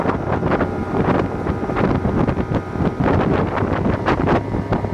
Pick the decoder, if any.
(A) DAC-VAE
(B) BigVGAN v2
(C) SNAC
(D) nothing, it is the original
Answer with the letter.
D